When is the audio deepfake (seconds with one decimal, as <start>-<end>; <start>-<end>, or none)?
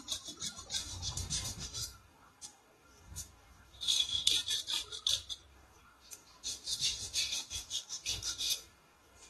0.8-4.3; 5.5-9.3